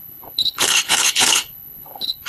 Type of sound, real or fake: fake